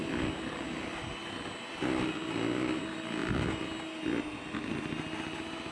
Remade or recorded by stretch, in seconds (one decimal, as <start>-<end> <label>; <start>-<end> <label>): 0.0-5.7 recorded